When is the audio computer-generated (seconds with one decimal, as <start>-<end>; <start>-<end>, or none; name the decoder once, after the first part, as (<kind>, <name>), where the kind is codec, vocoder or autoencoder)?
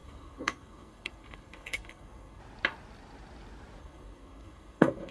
0.0-2.4 (codec, SNAC); 3.8-5.1